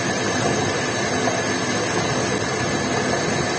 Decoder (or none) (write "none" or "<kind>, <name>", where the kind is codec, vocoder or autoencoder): none